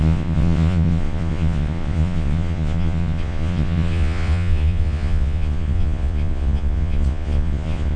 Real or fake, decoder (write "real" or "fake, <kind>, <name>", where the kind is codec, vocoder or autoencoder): fake, vocoder, Vocos